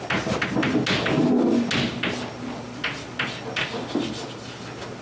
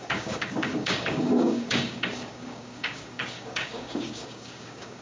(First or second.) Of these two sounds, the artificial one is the second